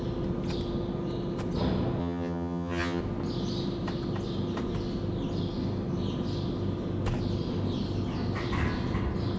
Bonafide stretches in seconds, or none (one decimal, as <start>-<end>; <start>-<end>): 0.0-2.0; 3.0-9.4